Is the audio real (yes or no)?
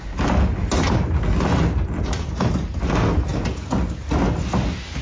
yes